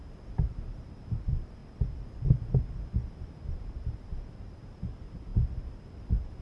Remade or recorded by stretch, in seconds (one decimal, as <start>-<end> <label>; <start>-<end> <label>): 0.0-0.7 recorded; 0.7-1.6 remade; 1.6-3.7 recorded; 3.7-6.4 remade